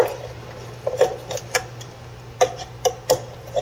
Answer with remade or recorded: recorded